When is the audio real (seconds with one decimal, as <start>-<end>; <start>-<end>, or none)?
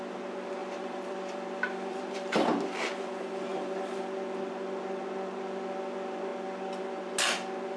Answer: 0.0-0.6; 3.1-3.5; 4.0-7.8